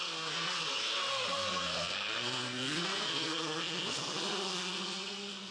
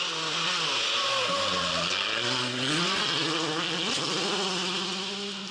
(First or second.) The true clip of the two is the second